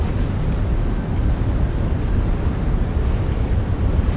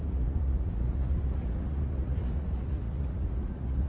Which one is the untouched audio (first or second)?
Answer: first